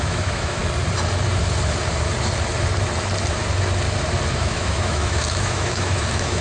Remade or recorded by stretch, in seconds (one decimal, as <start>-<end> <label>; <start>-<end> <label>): 0.0-0.6 remade; 0.6-4.4 recorded; 4.4-6.4 remade